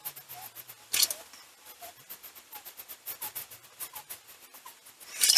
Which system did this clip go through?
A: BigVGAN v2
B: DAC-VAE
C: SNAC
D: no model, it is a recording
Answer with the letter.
D